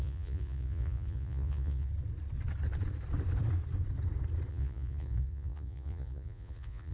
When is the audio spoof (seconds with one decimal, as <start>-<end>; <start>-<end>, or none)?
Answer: 0.0-1.9; 4.5-6.9